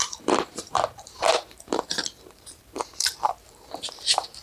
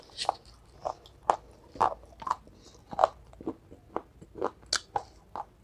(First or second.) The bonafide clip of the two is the second